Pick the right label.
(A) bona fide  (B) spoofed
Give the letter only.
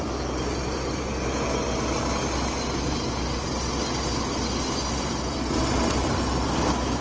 A